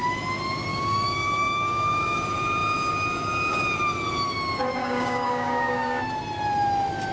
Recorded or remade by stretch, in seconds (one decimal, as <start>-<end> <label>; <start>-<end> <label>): 0.0-0.7 recorded; 0.7-2.2 remade; 2.2-4.8 recorded; 4.8-6.0 remade; 6.0-7.1 recorded